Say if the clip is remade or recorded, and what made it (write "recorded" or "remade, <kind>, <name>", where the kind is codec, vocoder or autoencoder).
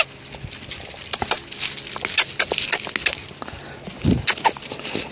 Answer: recorded